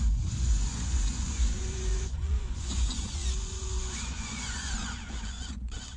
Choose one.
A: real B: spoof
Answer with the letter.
B